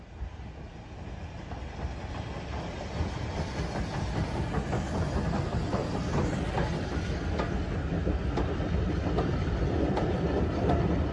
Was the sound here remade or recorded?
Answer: recorded